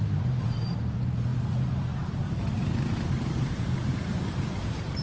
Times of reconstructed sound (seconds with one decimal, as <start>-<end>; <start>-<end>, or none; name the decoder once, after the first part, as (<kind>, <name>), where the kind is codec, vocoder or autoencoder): 0.0-5.0 (vocoder, BigVGAN v2)